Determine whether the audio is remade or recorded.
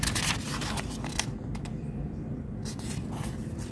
recorded